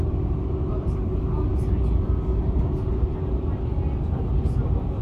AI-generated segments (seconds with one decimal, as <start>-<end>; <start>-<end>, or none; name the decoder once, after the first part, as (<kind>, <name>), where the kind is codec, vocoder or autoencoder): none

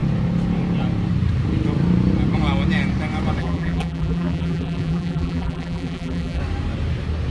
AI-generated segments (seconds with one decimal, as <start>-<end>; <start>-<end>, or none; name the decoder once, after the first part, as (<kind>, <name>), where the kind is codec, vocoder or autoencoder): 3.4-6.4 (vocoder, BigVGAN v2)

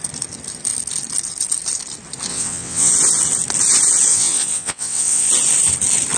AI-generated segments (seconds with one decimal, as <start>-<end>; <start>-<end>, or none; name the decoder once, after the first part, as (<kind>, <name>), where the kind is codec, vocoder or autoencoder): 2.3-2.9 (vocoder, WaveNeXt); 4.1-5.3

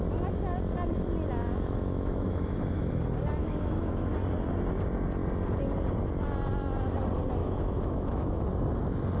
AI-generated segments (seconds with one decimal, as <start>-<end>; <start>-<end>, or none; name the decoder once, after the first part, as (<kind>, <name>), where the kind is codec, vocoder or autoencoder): 1.4-2.9 (autoencoder, DAC-VAE); 3.4-4.1; 7.4-8.4